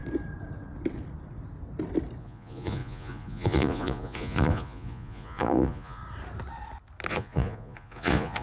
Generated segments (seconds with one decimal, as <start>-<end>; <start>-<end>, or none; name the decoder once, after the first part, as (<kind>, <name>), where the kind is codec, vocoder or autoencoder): 2.2-6.0 (vocoder, Vocos); 7.1-8.4